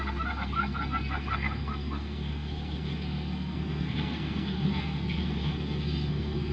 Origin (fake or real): fake